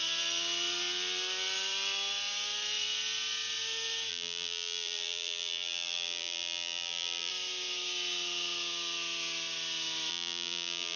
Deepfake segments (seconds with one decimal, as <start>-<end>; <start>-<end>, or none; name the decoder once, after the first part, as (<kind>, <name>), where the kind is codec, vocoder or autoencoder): 4.1-7.3 (vocoder, BigVGAN v2); 10.1-11.0